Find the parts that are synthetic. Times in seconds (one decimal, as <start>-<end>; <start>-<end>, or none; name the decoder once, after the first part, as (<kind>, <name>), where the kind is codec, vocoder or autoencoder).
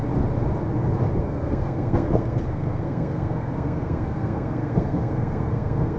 1.2-6.0 (codec, SNAC)